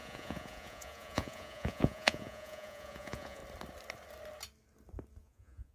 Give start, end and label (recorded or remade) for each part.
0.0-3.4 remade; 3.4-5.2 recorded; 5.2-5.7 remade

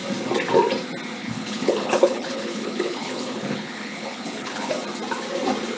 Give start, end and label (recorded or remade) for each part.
0.0-1.2 recorded; 1.2-4.7 remade; 4.7-5.8 recorded